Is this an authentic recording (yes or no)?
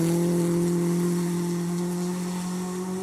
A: yes